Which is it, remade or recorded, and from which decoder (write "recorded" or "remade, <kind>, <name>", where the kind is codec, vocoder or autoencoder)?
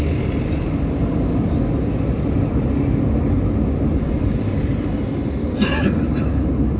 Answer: recorded